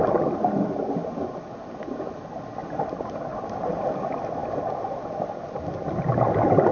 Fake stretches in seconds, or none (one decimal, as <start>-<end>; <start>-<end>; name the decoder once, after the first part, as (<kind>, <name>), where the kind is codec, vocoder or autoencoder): 2.6-3.6 (vocoder, BigVGAN v2)